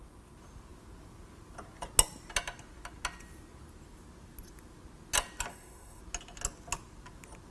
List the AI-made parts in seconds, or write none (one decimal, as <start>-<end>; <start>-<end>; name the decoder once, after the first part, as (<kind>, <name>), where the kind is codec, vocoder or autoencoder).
5.5-6.0 (codec, SNAC)